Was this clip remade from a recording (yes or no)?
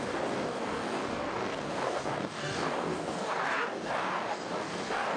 yes